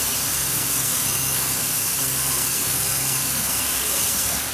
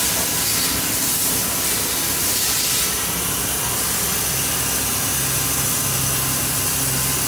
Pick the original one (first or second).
second